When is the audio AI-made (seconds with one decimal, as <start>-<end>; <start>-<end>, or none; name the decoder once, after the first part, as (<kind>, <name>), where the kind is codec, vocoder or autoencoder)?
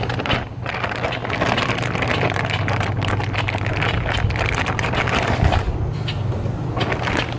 none